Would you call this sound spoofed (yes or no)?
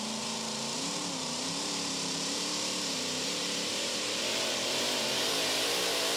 yes